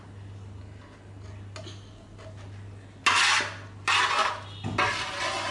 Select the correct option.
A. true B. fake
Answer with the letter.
A